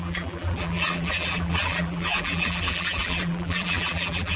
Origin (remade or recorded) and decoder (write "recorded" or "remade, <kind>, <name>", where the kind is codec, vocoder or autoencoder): remade, vocoder, BigVGAN v2